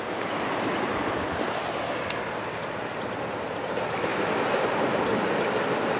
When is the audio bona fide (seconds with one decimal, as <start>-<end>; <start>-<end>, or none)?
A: 0.0-4.1; 5.3-6.0